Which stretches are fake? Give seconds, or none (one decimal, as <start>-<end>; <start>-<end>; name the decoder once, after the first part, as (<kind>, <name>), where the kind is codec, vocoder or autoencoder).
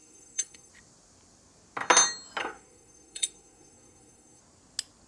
0.0-0.7 (codec, SNAC); 2.4-4.4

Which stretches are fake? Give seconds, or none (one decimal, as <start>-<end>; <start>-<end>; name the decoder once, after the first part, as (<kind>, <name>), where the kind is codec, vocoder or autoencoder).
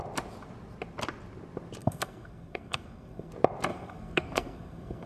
1.8-3.3 (codec, SNAC); 3.7-5.1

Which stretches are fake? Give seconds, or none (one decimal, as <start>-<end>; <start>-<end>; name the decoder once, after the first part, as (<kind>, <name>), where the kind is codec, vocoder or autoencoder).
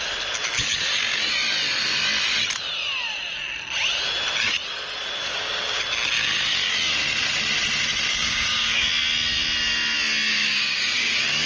5.3-5.8 (codec, DAC); 8.1-8.9; 10.3-11.1